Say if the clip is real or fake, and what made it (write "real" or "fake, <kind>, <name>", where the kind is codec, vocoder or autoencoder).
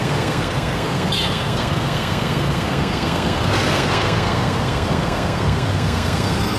fake, codec, SNAC